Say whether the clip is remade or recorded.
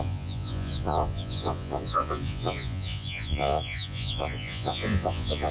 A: remade